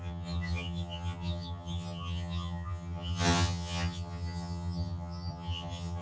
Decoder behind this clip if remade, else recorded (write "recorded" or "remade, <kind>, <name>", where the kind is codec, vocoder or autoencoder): remade, vocoder, HiFi-GAN